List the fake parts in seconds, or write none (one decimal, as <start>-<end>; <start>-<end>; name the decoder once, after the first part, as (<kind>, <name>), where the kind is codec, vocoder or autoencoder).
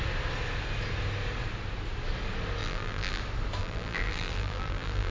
2.6-3.2 (vocoder, BigVGAN v2); 3.6-5.1